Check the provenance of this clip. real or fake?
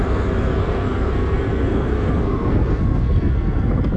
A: fake